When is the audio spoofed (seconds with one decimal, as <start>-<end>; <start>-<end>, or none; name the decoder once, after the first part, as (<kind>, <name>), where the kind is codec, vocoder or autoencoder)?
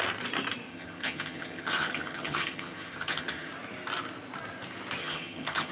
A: 0.7-3.5 (vocoder, HiFi-GAN); 5.0-5.7